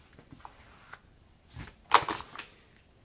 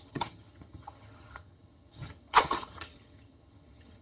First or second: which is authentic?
first